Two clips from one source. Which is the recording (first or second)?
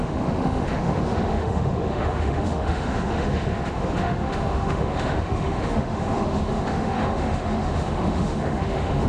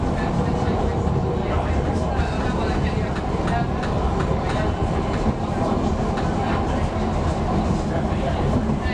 second